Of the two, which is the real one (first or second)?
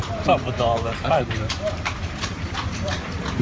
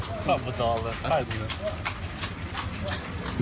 second